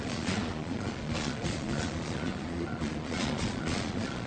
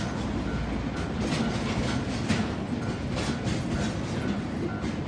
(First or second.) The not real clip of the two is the first